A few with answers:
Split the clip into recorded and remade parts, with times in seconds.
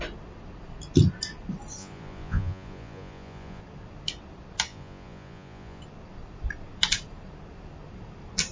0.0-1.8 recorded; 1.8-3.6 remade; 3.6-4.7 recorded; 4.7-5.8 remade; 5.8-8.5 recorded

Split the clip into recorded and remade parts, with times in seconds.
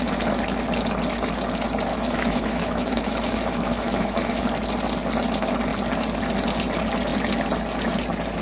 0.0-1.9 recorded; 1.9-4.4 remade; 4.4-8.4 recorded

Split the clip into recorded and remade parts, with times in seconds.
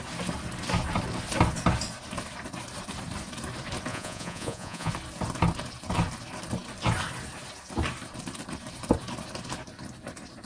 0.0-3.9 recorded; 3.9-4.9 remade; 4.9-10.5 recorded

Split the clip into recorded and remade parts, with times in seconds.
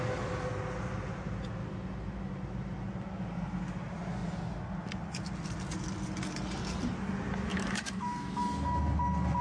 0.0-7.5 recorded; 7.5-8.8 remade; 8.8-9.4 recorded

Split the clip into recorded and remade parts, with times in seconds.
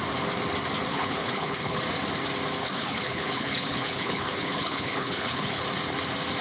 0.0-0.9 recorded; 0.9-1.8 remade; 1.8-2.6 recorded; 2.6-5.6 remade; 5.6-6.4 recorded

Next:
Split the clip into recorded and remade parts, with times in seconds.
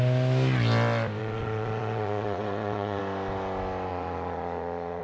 0.0-1.2 recorded; 1.2-3.0 remade; 3.0-3.9 recorded; 3.9-5.0 remade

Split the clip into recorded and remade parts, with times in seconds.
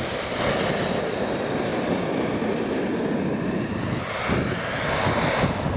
0.0-5.8 recorded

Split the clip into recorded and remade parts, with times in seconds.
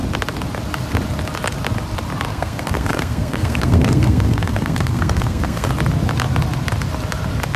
0.0-2.3 recorded; 2.3-5.7 remade; 5.7-7.6 recorded